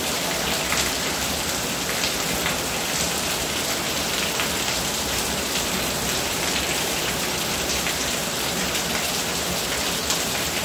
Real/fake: fake